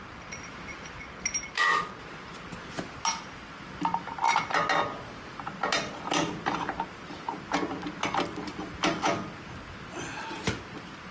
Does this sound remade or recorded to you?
recorded